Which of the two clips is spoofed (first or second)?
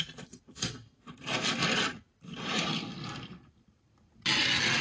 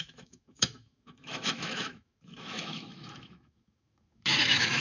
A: second